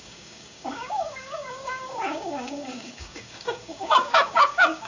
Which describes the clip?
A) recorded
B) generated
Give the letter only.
B